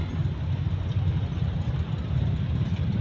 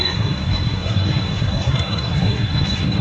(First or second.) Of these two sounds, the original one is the first